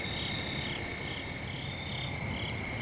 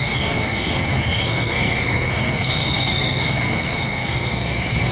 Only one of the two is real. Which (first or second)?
first